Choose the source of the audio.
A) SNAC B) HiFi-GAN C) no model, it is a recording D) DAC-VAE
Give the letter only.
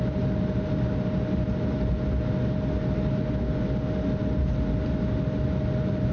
C